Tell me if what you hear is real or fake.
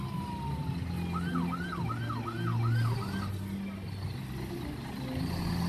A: real